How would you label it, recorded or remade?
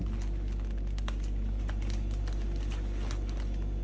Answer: recorded